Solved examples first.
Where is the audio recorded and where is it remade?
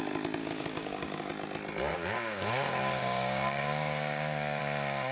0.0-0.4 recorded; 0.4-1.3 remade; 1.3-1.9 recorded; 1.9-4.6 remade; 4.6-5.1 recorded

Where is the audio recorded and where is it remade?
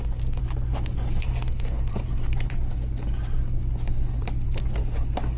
0.0-0.4 remade; 0.4-1.2 recorded; 1.2-1.9 remade; 1.9-5.4 recorded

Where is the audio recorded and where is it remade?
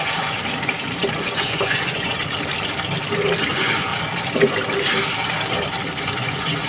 0.0-0.4 remade; 0.4-1.1 recorded; 1.1-2.2 remade; 2.2-3.5 recorded; 3.5-3.9 remade; 3.9-6.0 recorded; 6.0-6.7 remade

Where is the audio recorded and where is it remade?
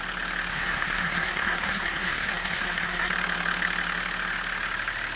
0.0-0.5 recorded; 0.5-3.1 remade; 3.1-5.2 recorded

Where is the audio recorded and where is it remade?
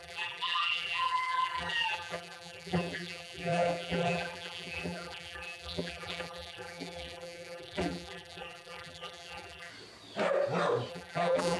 0.0-9.7 remade; 9.7-10.9 recorded; 10.9-11.6 remade